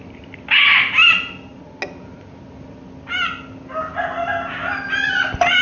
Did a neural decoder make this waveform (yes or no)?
no